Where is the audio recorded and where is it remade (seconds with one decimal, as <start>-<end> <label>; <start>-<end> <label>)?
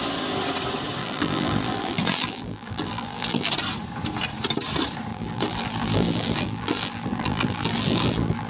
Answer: 0.0-1.0 recorded; 1.0-3.5 remade; 3.5-5.1 recorded; 5.1-8.5 remade